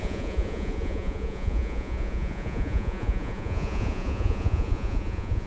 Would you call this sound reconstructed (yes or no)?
yes